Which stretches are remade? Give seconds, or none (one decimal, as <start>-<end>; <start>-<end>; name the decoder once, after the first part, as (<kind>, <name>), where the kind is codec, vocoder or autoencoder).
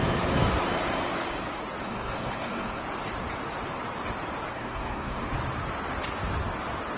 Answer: 1.8-2.8 (codec, SNAC); 4.5-5.3